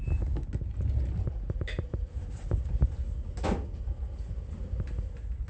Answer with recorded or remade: recorded